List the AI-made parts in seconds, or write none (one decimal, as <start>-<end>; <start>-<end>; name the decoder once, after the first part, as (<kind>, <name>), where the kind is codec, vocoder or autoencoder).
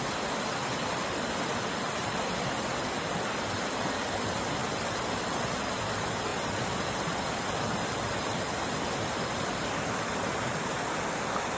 4.6-5.2 (vocoder, BigVGAN v2); 6.3-11.6